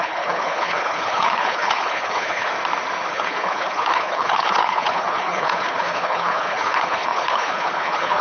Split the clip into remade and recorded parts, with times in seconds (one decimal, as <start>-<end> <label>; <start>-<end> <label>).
0.0-2.5 remade; 2.5-3.1 recorded; 3.1-8.2 remade